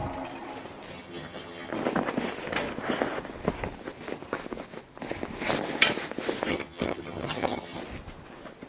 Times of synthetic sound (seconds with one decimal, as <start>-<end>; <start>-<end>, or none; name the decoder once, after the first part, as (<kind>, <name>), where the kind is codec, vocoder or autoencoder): 0.9-1.7 (vocoder, HiFi-GAN); 6.5-7.8